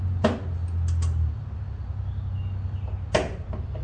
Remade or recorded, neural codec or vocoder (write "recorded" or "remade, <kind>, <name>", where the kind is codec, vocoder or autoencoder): recorded